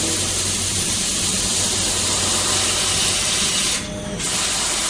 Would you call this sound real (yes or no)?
yes